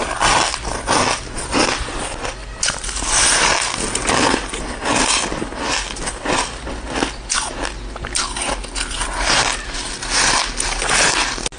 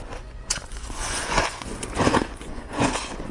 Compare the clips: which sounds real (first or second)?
first